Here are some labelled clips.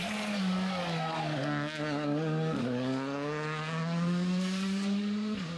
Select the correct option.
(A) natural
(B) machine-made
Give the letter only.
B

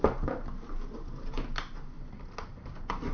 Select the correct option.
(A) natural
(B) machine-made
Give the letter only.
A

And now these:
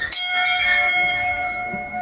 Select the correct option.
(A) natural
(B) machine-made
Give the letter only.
B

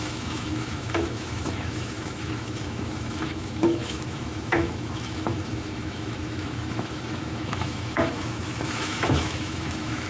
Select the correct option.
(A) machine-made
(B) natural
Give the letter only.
A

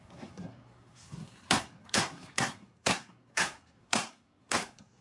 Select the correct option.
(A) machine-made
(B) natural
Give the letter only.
A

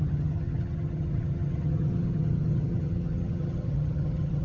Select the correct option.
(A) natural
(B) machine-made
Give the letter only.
B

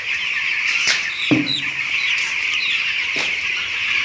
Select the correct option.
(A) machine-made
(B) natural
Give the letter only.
A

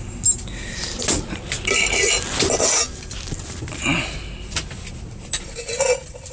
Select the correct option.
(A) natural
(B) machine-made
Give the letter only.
A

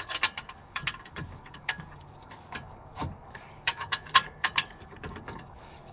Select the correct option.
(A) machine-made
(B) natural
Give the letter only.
A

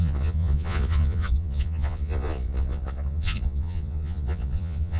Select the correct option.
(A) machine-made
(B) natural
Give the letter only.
A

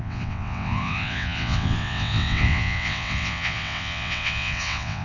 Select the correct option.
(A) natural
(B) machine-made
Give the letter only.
B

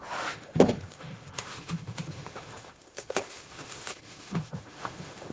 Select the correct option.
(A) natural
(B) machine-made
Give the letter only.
B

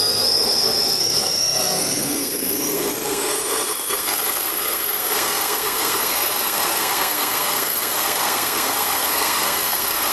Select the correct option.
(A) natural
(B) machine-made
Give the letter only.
B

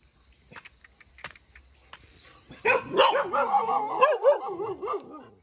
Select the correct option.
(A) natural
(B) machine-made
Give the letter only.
A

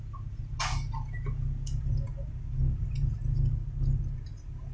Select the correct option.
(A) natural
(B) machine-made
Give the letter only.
A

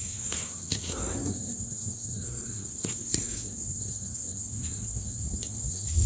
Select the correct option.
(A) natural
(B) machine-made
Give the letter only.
B